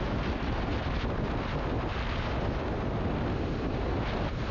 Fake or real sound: real